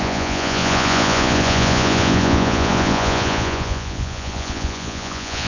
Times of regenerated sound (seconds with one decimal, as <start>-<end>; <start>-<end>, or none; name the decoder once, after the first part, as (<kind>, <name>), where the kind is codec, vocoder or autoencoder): 0.0-5.5 (vocoder, Vocos)